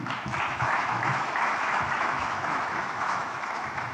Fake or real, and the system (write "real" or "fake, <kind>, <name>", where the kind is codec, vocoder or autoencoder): fake, autoencoder, DAC-VAE